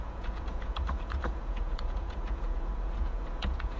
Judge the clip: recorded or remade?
remade